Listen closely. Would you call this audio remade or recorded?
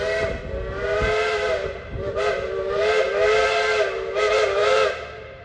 remade